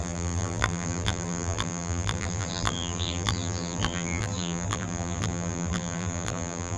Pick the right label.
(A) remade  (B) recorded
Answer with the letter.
A